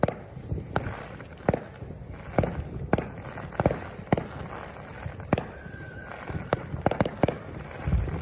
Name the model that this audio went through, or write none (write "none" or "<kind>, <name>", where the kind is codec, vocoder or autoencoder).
none